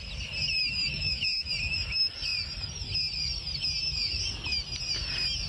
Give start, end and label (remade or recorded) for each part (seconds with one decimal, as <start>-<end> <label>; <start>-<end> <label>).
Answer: 0.0-0.6 recorded; 0.6-1.5 remade; 1.5-5.5 recorded